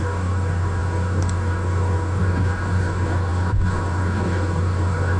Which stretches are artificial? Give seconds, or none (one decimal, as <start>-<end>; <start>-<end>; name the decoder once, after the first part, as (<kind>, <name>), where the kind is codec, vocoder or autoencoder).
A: 0.0-5.2 (codec, DAC)